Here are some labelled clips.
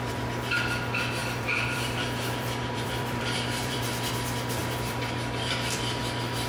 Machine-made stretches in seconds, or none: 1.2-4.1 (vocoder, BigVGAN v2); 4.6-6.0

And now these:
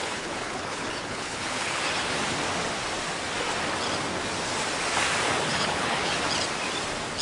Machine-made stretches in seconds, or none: 0.0-1.8 (codec, HILCodec); 5.5-6.1

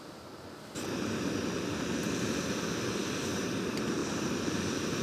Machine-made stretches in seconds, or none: none

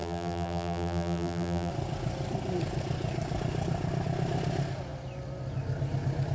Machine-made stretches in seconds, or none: 0.0-1.7 (vocoder, BigVGAN v2)

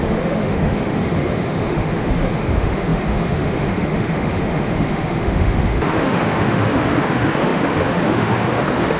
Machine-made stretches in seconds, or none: 0.0-9.0 (autoencoder, DAC-VAE)

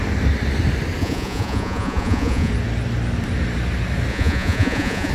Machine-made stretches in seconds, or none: 1.0-2.5 (vocoder, Vocos); 4.1-5.1